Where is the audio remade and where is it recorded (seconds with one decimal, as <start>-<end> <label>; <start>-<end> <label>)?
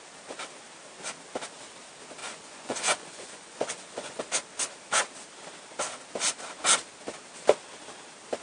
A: 0.0-2.2 recorded; 2.2-4.2 remade; 4.2-8.4 recorded